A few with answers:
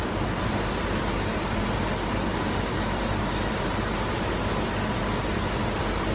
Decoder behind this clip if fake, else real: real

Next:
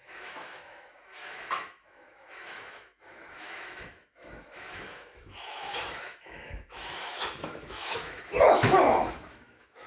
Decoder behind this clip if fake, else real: fake, autoencoder, DAC-VAE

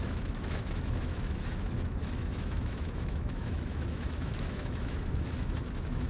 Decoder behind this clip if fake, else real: fake, autoencoder, DAC-VAE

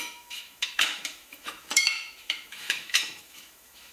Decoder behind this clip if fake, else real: fake, autoencoder, DAC-VAE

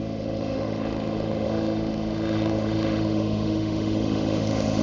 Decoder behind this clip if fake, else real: fake, autoencoder, DAC-VAE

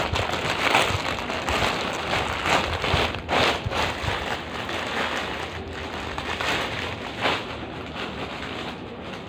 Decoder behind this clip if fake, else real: real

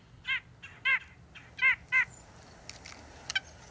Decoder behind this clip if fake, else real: real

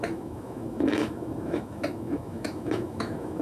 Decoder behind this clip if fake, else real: fake, autoencoder, DAC-VAE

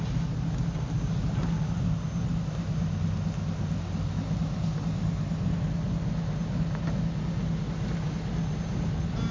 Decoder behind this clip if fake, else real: real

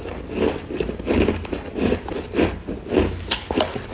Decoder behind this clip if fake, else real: real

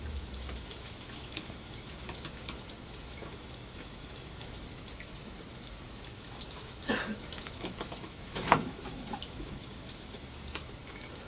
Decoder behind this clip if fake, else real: fake, autoencoder, DAC-VAE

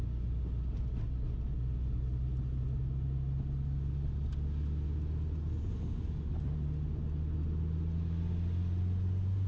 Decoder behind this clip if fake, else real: real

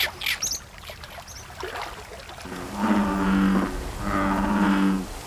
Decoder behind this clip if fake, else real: real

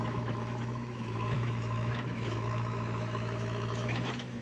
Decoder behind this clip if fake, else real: fake, autoencoder, DAC-VAE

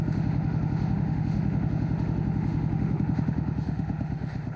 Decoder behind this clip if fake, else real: fake, autoencoder, DAC-VAE